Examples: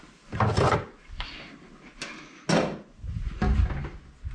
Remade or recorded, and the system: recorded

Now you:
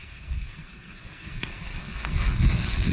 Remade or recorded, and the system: remade, codec, SNAC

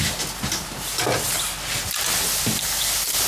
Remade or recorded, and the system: recorded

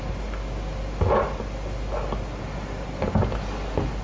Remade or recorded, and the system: recorded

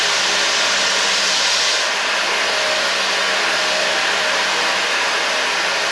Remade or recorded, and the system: recorded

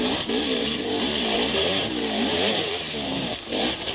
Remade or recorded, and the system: remade, vocoder, BigVGAN v2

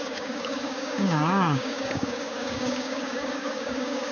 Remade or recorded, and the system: remade, codec, DAC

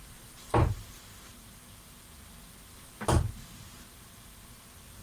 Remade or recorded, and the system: remade, vocoder, BigVGAN v2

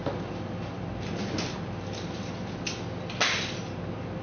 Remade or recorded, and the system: recorded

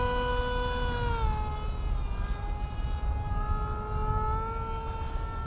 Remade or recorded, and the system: recorded